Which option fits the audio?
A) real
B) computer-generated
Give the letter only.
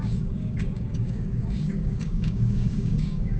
B